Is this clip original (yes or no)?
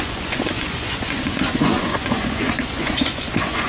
no